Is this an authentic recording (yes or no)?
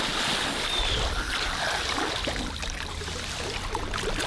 yes